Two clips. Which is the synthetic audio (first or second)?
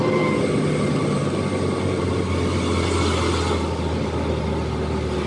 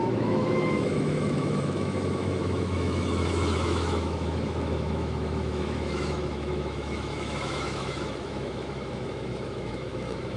second